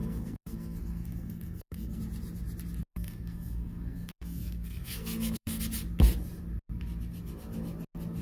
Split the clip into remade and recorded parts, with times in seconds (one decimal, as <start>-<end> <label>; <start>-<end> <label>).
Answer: 0.0-2.0 remade; 2.0-2.9 recorded; 2.9-5.6 remade; 5.6-8.2 recorded